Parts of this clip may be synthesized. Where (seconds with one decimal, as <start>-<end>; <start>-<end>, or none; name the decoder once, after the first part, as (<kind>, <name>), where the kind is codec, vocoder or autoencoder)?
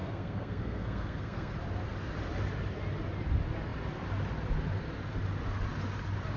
0.0-1.5 (codec, SNAC)